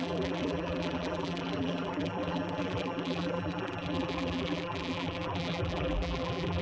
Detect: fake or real fake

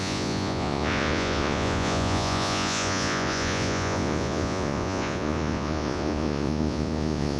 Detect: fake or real fake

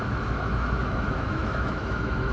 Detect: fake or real fake